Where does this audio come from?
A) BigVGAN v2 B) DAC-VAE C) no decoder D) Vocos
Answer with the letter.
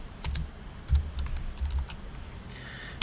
C